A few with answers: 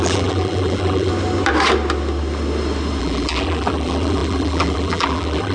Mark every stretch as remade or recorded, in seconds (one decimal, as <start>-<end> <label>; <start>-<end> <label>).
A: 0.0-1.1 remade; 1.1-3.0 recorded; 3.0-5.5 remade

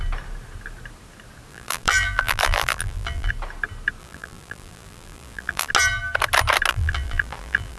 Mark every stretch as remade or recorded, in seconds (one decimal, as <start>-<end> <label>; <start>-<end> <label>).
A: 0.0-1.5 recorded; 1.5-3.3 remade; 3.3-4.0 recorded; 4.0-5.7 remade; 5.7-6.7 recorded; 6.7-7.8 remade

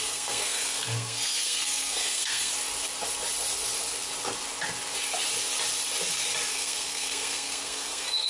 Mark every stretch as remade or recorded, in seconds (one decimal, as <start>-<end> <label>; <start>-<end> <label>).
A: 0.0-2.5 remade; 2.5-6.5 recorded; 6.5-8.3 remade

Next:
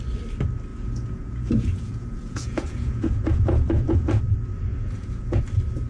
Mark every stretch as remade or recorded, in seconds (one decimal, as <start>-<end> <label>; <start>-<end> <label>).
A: 0.0-0.7 recorded; 0.7-4.2 remade; 4.2-4.7 recorded; 4.7-5.4 remade; 5.4-5.9 recorded

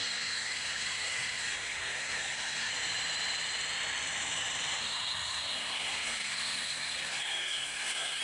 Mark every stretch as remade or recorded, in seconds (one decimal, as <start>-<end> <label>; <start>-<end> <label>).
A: 0.0-2.7 remade; 2.7-4.8 recorded; 4.8-8.2 remade

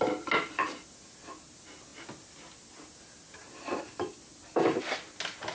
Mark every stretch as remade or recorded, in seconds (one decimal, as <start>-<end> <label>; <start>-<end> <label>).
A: 0.0-5.5 recorded

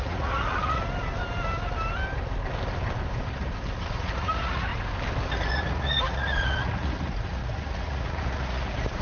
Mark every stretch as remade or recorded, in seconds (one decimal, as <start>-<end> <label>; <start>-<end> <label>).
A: 0.0-0.8 remade; 0.8-3.8 recorded; 3.8-4.7 remade; 4.7-5.3 recorded; 5.3-9.0 remade

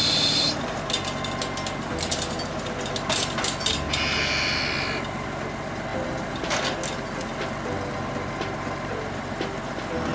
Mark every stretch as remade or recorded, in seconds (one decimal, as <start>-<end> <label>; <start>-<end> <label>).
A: 0.0-10.1 recorded